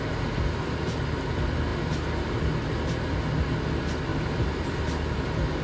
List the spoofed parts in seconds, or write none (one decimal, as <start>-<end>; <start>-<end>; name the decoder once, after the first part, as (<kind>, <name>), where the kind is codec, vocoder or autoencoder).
4.1-4.8 (vocoder, BigVGAN v2)